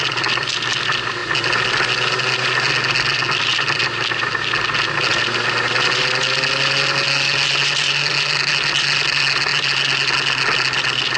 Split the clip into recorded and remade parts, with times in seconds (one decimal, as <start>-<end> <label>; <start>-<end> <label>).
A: 0.0-11.2 recorded